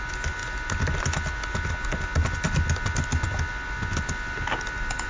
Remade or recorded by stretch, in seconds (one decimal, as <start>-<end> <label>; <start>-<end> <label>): 0.0-5.1 recorded